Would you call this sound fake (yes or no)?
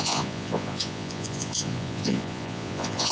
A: yes